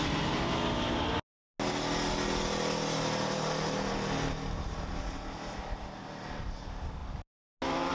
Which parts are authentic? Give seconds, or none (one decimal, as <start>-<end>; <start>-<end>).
0.0-7.9